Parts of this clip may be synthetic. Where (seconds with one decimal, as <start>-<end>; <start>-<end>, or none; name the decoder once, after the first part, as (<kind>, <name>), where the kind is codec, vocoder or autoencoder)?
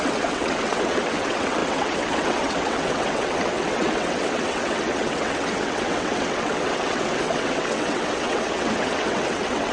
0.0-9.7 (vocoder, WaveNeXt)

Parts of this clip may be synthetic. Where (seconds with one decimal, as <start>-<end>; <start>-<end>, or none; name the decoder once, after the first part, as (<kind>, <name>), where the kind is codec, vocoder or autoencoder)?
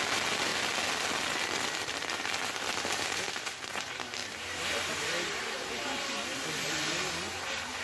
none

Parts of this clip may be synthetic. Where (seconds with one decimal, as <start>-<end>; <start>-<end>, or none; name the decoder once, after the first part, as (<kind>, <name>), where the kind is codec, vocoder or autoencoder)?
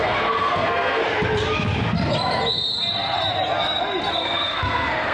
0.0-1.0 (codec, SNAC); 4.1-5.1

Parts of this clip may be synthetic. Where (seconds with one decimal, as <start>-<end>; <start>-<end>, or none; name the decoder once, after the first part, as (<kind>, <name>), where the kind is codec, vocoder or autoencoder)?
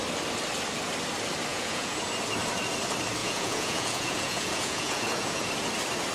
1.5-2.1 (vocoder, Vocos); 3.2-5.5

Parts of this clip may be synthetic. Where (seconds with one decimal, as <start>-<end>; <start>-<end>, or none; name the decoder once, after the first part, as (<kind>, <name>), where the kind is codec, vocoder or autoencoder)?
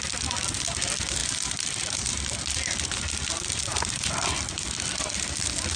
1.2-4.1 (vocoder, BigVGAN v2)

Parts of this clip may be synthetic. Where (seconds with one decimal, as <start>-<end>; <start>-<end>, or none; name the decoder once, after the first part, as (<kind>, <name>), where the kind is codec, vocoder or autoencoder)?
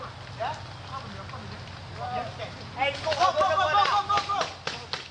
none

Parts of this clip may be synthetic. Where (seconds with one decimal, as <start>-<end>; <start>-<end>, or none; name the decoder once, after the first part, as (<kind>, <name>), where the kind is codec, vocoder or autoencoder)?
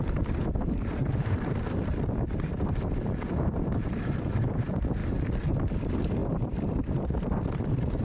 0.0-1.9 (vocoder, BigVGAN v2); 3.3-5.0; 5.7-6.2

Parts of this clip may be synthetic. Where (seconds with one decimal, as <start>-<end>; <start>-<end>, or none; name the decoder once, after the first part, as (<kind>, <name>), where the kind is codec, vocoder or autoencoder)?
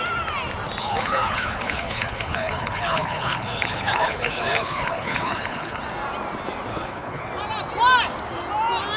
0.8-5.8 (codec, HILCodec); 6.7-7.3